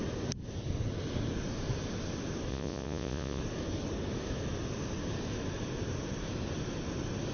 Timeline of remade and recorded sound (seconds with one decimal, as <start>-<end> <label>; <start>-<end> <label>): 0.0-2.5 recorded; 2.5-3.4 remade; 3.4-7.3 recorded